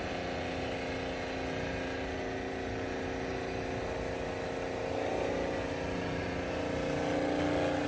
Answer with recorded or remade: recorded